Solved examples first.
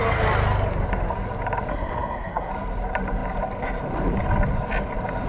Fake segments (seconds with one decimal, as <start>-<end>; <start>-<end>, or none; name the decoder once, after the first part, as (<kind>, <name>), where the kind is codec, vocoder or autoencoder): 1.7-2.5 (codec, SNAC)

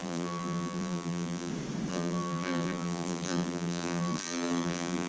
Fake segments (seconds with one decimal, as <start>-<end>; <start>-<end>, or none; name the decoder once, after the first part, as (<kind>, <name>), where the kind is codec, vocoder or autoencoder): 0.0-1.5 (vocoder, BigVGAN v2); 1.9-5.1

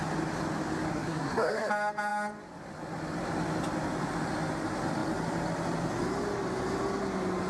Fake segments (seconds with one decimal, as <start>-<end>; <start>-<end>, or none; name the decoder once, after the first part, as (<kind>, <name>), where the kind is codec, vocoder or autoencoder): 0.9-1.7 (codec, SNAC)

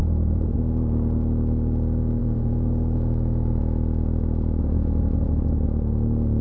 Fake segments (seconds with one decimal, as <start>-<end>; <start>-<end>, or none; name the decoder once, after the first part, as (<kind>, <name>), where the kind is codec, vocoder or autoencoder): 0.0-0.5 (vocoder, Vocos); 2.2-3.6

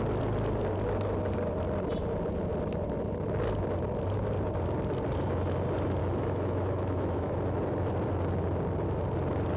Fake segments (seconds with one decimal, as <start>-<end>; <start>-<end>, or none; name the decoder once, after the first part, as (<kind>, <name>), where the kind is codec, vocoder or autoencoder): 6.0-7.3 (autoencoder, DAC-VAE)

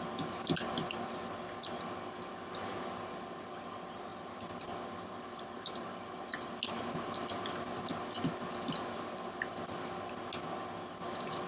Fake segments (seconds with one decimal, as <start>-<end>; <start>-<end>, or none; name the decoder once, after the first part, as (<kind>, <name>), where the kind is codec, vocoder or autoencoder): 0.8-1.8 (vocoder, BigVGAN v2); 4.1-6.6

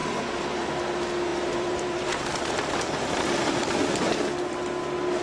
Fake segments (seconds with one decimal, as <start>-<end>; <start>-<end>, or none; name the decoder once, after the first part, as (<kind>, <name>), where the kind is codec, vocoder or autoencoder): 0.0-0.7 (vocoder, BigVGAN v2); 1.3-3.6